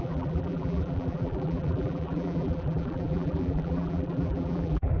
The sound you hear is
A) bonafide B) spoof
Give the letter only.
B